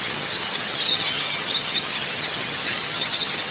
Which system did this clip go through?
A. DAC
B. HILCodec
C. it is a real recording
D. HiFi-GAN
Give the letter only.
D